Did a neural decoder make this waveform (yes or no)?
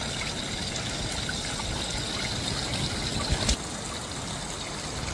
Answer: no